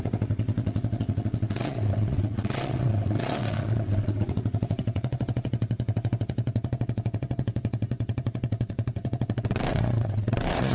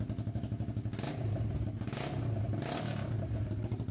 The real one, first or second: second